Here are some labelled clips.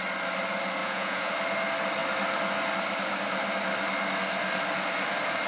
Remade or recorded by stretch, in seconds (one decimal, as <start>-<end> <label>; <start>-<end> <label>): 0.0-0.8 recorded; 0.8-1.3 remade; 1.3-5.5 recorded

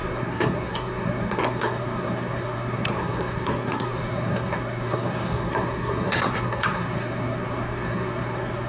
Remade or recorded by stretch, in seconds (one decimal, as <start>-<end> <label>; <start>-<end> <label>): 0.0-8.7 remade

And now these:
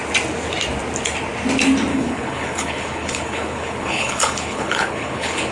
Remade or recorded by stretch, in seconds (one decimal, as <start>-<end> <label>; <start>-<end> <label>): 0.0-1.9 recorded; 1.9-5.5 remade